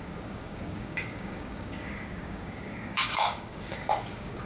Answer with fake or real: fake